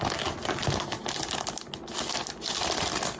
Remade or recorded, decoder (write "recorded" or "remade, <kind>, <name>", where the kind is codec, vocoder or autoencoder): recorded